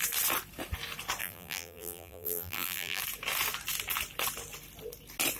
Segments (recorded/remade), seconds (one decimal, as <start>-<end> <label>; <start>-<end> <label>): 0.0-1.2 recorded; 1.2-3.0 remade; 3.0-5.4 recorded

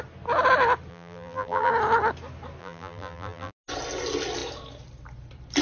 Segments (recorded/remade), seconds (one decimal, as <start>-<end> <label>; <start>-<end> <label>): 0.0-0.9 recorded; 0.9-1.7 remade; 1.7-2.6 recorded; 2.6-3.5 remade; 3.5-5.6 recorded

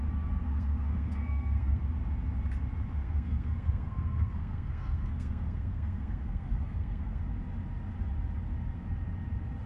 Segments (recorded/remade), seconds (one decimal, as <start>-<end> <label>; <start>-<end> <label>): 0.0-0.4 recorded; 0.4-1.8 remade; 1.8-3.0 recorded; 3.0-7.2 remade; 7.2-9.7 recorded

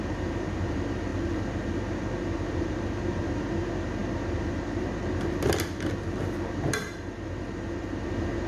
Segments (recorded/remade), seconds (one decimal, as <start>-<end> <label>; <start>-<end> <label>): 0.0-8.5 recorded

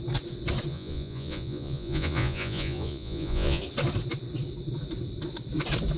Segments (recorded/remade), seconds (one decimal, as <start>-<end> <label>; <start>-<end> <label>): 0.0-0.7 recorded; 0.7-3.6 remade; 3.6-6.0 recorded

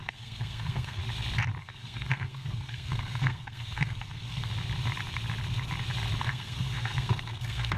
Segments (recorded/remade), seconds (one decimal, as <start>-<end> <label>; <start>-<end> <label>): 0.0-1.0 remade; 1.0-1.6 recorded; 1.6-4.5 remade; 4.5-6.2 recorded; 6.2-7.8 remade

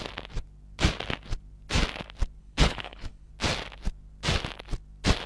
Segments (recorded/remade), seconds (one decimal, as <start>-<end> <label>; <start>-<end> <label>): 0.0-2.4 recorded; 2.4-3.3 remade; 3.3-5.3 recorded

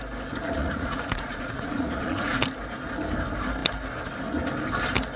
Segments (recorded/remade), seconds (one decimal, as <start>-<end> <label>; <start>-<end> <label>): 0.0-0.6 recorded; 0.6-2.4 remade; 2.4-5.2 recorded